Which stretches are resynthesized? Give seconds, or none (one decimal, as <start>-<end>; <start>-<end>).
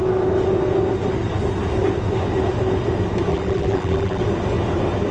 3.3-4.2